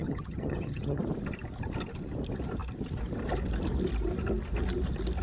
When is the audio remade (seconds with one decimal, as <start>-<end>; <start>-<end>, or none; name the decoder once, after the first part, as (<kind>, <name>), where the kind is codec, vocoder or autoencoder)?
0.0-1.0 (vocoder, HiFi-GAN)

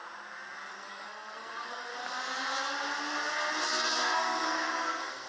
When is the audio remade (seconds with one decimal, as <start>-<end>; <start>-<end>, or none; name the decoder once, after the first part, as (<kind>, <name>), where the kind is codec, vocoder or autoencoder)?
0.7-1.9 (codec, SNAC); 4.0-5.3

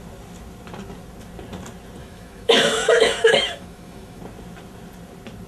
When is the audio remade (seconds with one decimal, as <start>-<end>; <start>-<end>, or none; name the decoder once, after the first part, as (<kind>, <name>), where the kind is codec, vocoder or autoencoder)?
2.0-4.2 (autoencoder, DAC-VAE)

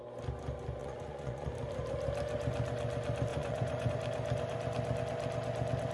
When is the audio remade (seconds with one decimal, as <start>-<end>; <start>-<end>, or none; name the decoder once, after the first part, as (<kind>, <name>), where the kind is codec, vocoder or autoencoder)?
0.8-1.5 (vocoder, Vocos); 3.3-3.9

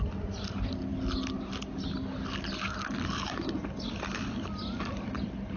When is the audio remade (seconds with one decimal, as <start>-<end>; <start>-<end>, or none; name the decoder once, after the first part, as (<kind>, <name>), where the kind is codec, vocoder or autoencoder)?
none

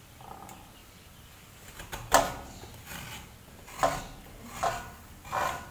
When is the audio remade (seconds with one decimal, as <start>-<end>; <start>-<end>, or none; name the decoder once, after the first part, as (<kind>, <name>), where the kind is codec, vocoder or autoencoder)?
none

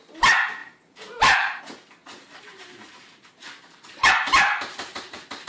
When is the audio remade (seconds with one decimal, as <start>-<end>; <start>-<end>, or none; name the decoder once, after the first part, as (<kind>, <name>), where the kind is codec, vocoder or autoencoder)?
0.6-1.6 (vocoder, BigVGAN v2); 2.0-5.5

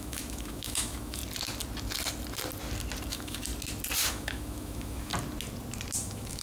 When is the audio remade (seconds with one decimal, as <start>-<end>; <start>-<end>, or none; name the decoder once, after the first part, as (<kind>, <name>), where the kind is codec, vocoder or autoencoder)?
0.0-1.2 (autoencoder, DAC-VAE); 3.1-3.5; 4.1-5.1; 6.0-6.4